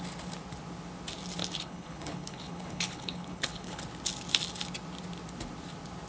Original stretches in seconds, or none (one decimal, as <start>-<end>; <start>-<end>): 0.0-1.4; 3.8-6.1